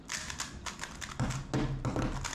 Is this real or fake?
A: real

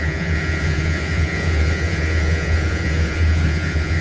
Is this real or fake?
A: fake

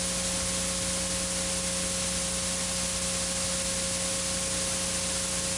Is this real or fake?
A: real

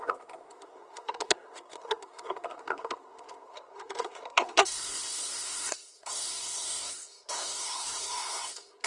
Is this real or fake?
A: fake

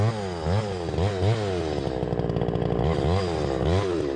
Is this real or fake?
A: real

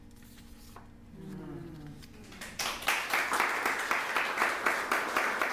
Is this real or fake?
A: real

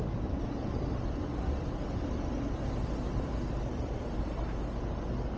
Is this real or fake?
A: real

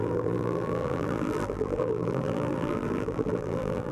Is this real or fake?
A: fake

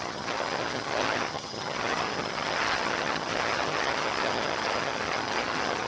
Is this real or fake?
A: fake